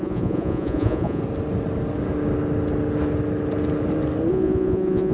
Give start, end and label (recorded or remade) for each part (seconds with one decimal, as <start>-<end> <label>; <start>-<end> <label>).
0.0-1.2 remade; 1.2-4.3 recorded; 4.3-5.1 remade